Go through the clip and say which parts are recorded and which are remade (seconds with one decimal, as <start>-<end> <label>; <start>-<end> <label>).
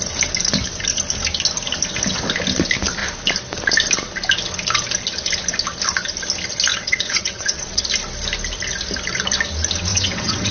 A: 0.0-6.7 recorded; 6.7-7.8 remade; 7.8-9.9 recorded; 9.9-10.5 remade